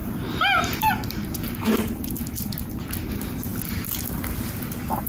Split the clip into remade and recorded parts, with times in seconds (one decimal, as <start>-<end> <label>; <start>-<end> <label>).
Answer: 0.0-5.1 remade